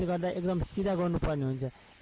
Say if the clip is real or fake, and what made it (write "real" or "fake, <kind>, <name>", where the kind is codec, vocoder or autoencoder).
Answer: real